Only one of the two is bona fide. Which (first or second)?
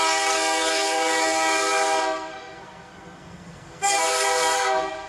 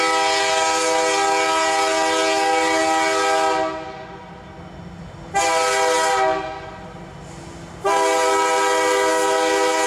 second